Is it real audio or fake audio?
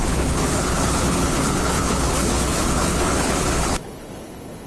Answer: fake